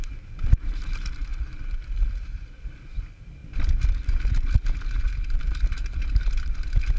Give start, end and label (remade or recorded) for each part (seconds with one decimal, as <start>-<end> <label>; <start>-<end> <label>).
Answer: 0.0-7.0 recorded